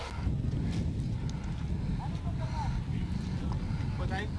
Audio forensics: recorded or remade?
recorded